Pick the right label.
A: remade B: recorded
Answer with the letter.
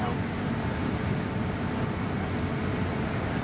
B